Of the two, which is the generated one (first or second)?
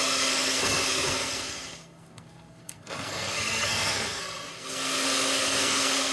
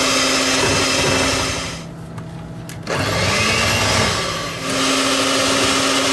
first